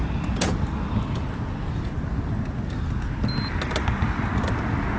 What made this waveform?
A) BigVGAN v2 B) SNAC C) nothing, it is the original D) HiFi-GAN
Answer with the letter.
C